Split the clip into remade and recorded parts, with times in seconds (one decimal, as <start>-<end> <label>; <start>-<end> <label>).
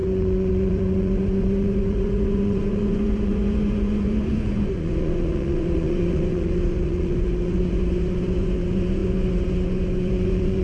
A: 0.0-10.6 remade